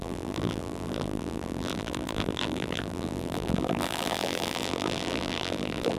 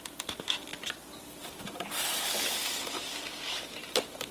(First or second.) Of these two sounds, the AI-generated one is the first